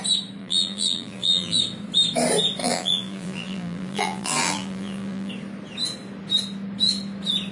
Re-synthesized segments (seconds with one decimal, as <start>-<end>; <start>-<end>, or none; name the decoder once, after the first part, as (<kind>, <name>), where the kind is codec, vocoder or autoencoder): 0.4-1.6 (vocoder, BigVGAN v2); 2.6-5.3